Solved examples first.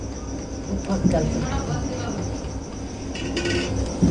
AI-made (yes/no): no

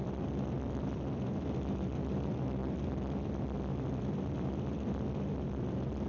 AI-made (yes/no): yes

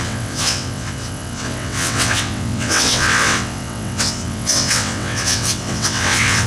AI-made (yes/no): yes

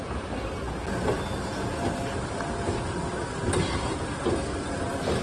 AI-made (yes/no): no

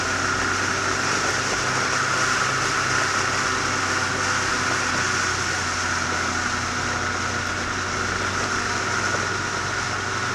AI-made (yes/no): no